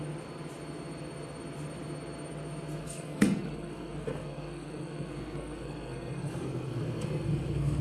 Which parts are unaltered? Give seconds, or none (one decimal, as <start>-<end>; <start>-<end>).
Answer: 0.0-2.8